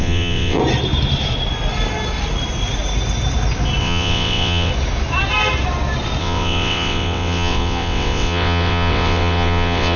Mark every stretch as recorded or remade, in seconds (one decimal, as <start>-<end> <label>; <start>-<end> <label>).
0.0-0.6 remade; 0.6-3.8 recorded; 3.8-4.7 remade; 4.7-6.2 recorded; 6.2-10.0 remade